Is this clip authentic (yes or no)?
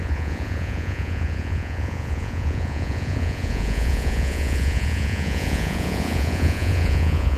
no